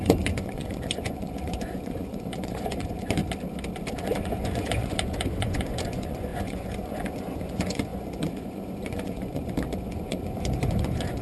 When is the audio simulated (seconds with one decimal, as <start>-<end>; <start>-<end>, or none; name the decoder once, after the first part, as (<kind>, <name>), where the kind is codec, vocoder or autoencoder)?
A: 0.0-3.2 (vocoder, Vocos); 3.9-11.2